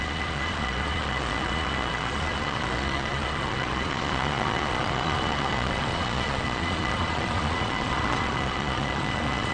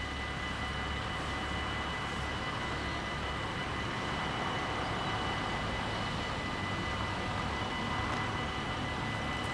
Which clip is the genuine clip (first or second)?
second